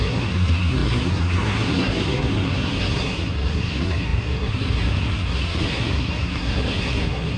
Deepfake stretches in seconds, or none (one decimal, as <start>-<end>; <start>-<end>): 0.0-7.4